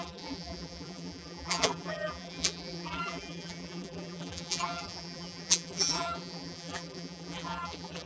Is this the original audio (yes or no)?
no